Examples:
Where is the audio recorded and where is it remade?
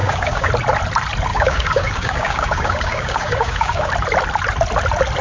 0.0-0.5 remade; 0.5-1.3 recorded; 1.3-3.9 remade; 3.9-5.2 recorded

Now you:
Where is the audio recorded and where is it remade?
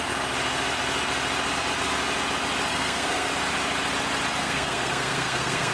0.0-2.7 recorded; 2.7-3.3 remade; 3.3-4.4 recorded; 4.4-5.7 remade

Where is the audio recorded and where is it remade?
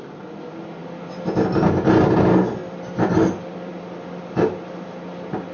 0.0-5.5 recorded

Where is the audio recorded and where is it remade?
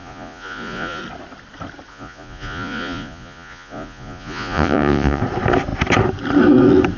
0.0-1.0 remade; 1.0-1.9 recorded; 1.9-5.2 remade; 5.2-7.0 recorded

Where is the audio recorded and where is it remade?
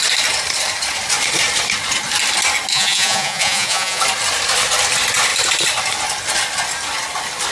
0.0-2.7 recorded; 2.7-4.0 remade; 4.0-7.5 recorded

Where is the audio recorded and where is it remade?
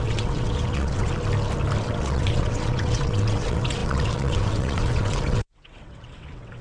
0.0-1.1 remade; 1.1-1.8 recorded; 1.8-6.6 remade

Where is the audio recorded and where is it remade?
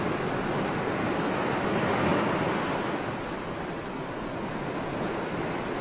0.0-5.8 recorded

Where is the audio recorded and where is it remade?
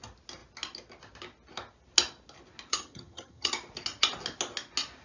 0.0-2.7 recorded; 2.7-3.5 remade; 3.5-5.0 recorded